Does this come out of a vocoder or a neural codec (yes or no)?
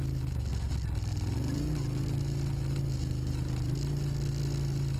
no